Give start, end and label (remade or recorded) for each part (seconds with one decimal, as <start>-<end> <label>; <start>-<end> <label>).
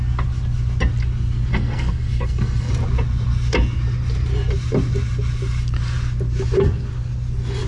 0.0-1.5 recorded; 1.5-2.7 remade; 2.7-7.7 recorded